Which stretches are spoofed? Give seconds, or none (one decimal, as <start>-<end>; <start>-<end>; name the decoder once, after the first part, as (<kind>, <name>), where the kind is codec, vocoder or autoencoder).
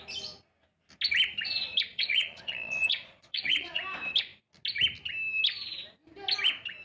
1.9-3.8 (vocoder, Vocos)